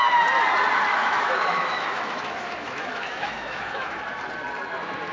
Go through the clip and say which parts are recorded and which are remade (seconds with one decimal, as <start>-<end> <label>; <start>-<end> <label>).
0.0-0.9 recorded; 0.9-4.0 remade; 4.0-5.1 recorded